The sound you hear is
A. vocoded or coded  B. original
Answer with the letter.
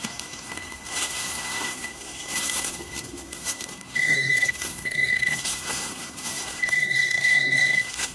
A